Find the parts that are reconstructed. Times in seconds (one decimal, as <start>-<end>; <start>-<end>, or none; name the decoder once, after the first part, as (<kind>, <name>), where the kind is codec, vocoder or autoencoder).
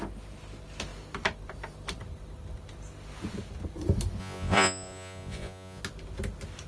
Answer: 4.2-5.8 (vocoder, Vocos)